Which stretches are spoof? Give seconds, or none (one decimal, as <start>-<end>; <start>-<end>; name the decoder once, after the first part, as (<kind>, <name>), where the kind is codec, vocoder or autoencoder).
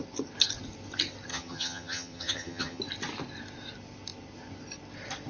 1.3-2.8 (vocoder, HiFi-GAN)